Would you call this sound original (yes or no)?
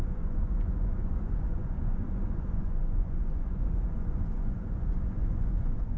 no